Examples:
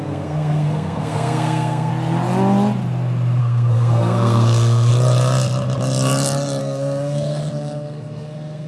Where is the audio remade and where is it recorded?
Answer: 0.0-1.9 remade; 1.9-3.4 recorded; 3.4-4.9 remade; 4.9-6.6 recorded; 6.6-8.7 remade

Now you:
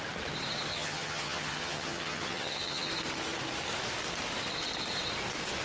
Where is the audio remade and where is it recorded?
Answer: 0.0-0.7 recorded; 0.7-2.9 remade; 2.9-5.6 recorded

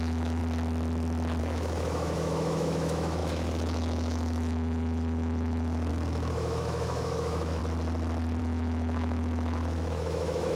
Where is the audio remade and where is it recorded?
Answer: 0.0-0.4 remade; 0.4-1.4 recorded; 1.4-7.6 remade; 7.6-8.4 recorded; 8.4-10.6 remade

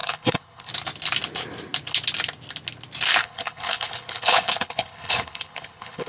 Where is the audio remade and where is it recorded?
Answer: 0.0-0.7 remade; 0.7-3.2 recorded; 3.2-6.1 remade